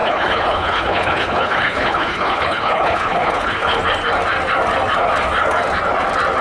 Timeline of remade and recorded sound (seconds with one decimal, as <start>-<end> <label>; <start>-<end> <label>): 0.0-3.8 remade; 3.8-6.4 recorded